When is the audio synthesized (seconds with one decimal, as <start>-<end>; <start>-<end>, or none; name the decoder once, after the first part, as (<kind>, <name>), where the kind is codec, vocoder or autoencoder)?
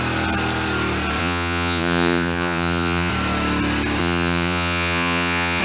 1.2-3.1 (vocoder, Vocos); 4.0-5.6